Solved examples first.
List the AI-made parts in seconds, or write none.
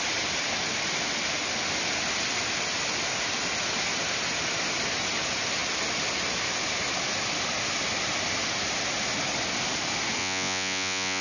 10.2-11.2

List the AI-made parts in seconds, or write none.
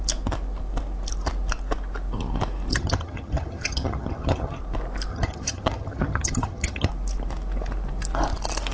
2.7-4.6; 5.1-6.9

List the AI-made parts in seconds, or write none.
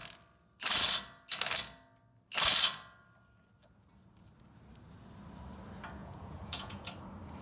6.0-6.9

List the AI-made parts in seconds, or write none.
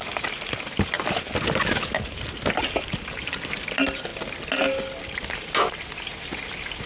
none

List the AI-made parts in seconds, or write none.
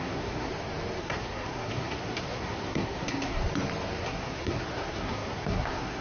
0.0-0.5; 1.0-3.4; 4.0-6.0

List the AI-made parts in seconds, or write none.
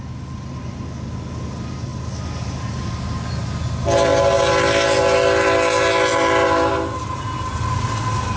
none